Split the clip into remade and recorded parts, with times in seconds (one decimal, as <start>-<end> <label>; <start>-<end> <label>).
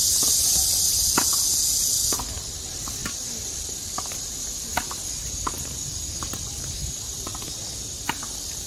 0.0-8.7 recorded